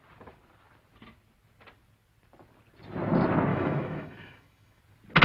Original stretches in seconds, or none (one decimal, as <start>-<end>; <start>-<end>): 0.0-3.5; 4.8-5.2